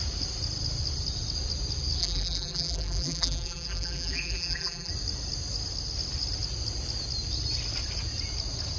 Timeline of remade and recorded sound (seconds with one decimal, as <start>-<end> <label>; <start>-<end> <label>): 0.0-2.0 recorded; 2.0-4.9 remade; 4.9-8.8 recorded